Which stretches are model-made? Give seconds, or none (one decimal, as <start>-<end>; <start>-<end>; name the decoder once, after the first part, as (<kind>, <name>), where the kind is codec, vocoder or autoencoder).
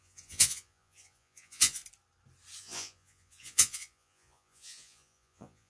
0.0-1.8 (vocoder, Vocos); 2.6-5.7